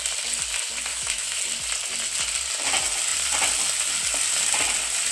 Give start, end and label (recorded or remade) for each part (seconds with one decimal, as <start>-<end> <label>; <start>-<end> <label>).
0.0-0.9 recorded; 0.9-1.4 remade; 1.4-5.1 recorded